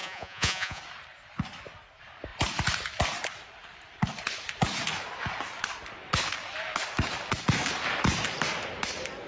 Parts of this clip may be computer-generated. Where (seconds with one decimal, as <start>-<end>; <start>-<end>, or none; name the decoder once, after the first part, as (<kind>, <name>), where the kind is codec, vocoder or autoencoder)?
0.0-0.8 (vocoder, Vocos)